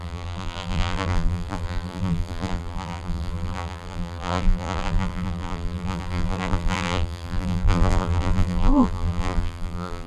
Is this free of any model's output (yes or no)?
no